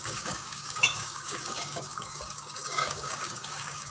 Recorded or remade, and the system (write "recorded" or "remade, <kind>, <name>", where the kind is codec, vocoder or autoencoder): remade, codec, DAC